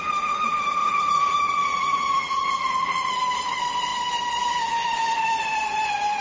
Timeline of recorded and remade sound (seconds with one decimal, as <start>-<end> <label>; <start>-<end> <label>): 0.0-0.8 recorded; 0.8-3.1 remade; 3.1-6.2 recorded